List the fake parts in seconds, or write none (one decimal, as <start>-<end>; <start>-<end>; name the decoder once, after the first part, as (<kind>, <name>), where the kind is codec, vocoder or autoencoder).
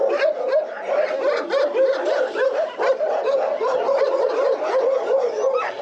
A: none